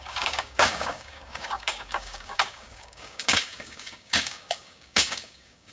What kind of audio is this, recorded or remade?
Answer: remade